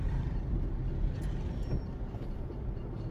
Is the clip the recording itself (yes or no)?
yes